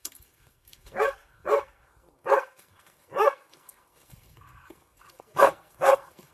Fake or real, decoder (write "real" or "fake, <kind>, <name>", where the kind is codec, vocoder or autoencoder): fake, codec, SNAC